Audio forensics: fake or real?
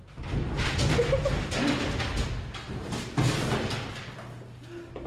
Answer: real